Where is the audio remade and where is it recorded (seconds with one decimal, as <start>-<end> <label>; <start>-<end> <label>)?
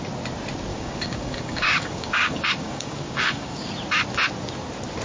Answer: 0.0-0.7 recorded; 0.7-3.7 remade; 3.7-5.0 recorded